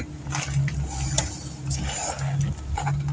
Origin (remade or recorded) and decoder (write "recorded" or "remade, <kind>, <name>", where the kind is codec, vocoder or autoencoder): recorded